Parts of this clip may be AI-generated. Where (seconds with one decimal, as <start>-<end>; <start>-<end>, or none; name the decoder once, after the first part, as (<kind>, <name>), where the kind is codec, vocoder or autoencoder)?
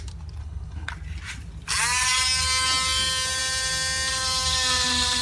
0.4-0.9 (codec, HILCodec)